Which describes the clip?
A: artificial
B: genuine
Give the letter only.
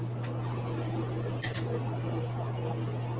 B